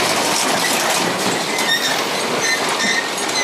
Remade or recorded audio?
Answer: recorded